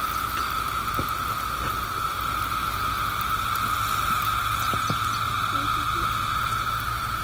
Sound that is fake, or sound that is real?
real